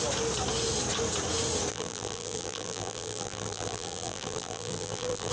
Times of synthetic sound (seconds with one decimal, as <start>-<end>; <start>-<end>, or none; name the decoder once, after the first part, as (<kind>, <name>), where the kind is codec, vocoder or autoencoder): 1.7-5.3 (vocoder, BigVGAN v2)